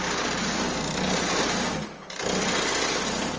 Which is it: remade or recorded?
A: recorded